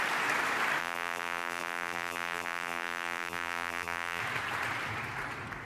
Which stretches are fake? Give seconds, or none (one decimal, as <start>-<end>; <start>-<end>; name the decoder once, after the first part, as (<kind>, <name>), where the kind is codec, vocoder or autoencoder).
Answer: 0.8-4.2 (vocoder, BigVGAN v2)